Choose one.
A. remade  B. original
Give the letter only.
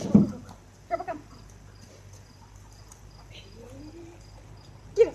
B